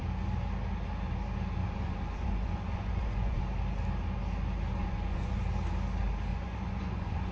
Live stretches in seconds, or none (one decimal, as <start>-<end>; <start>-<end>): 0.0-1.6; 3.4-4.8; 5.4-6.3